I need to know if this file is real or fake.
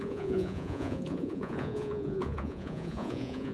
fake